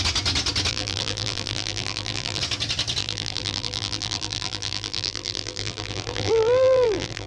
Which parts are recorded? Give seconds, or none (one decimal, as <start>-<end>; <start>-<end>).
0.0-0.7; 2.4-3.0